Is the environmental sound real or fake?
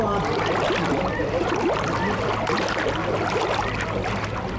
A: real